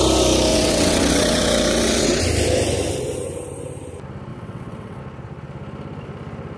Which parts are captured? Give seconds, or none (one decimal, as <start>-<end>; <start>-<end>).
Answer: 0.0-0.5; 2.2-4.3; 5.0-6.6